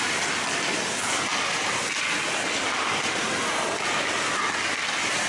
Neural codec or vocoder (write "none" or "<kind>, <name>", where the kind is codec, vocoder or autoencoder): none